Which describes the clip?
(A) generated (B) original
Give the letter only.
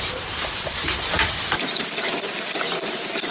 A